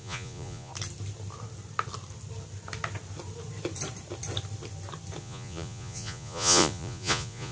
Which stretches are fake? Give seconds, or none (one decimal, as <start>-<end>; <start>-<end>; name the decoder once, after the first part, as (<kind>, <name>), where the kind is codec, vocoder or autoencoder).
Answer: 0.0-0.7 (vocoder, Vocos); 5.2-7.5